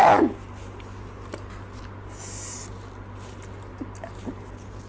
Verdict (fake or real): real